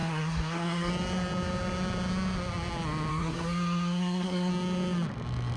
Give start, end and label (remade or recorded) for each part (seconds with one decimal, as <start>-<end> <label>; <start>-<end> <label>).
0.0-0.9 remade; 0.9-3.1 recorded; 3.1-4.5 remade; 4.5-5.6 recorded